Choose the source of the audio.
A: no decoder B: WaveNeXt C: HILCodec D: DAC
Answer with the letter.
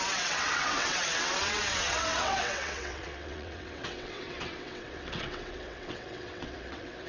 B